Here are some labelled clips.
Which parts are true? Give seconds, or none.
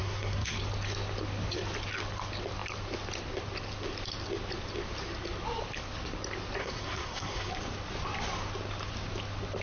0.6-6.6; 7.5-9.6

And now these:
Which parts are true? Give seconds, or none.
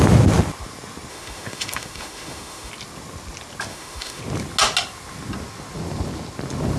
0.0-1.1; 2.7-3.7; 4.2-6.8